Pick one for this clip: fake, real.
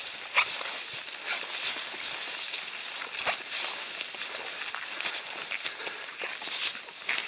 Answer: real